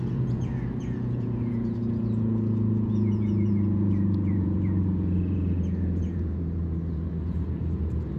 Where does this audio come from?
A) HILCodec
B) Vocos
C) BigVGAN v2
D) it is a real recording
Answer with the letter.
B